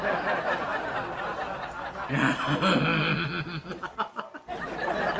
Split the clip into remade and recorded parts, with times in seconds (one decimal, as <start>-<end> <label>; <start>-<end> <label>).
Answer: 0.0-5.2 recorded